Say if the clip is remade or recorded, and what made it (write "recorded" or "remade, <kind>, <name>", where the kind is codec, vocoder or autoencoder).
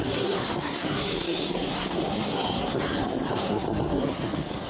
remade, codec, SNAC